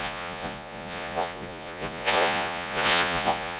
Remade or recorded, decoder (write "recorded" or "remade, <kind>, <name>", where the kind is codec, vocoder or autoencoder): remade, vocoder, Vocos